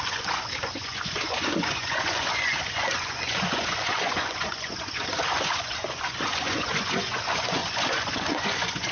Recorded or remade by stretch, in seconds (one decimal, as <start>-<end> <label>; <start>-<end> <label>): 0.0-8.9 remade

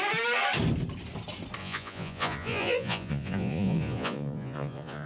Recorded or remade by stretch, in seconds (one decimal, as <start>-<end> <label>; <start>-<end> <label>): 0.0-1.6 recorded; 1.6-5.1 remade

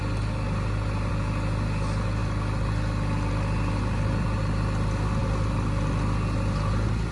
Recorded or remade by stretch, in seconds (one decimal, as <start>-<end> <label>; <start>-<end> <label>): 0.0-7.1 recorded